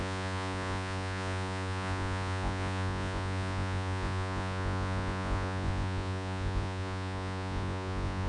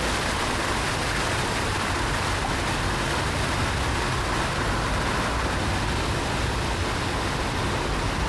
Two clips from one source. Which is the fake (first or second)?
first